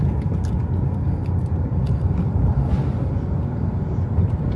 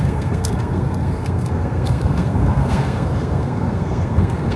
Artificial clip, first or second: second